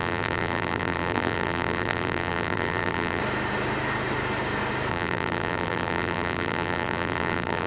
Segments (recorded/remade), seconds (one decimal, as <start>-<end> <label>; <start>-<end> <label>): 0.0-3.2 remade; 3.2-4.9 recorded; 4.9-7.7 remade